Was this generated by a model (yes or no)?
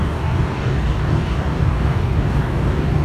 yes